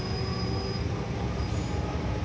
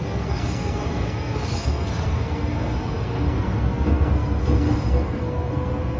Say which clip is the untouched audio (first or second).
first